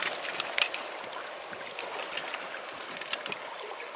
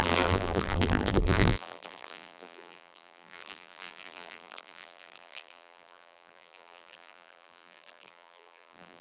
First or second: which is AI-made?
second